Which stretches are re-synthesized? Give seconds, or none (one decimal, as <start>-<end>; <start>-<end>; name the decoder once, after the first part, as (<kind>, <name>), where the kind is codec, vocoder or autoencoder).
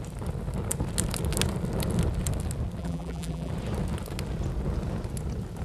2.8-3.5 (vocoder, BigVGAN v2)